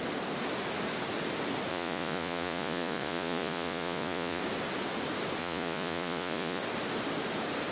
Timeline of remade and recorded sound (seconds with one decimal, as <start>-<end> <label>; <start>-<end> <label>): 0.0-1.7 recorded; 1.7-4.4 remade; 4.4-5.4 recorded; 5.4-6.6 remade; 6.6-7.7 recorded